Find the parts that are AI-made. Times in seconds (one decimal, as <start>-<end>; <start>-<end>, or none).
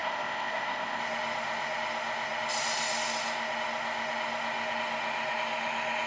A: 0.0-1.0